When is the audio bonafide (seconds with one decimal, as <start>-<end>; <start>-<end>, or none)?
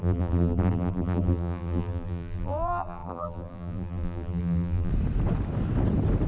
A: 4.9-6.3